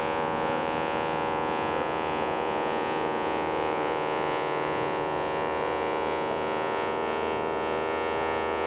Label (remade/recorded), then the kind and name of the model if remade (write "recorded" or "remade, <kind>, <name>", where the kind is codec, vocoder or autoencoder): remade, vocoder, Vocos